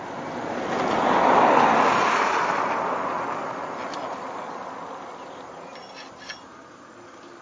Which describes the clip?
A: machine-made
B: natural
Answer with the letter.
B